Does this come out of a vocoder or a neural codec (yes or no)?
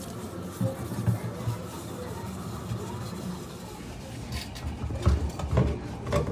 no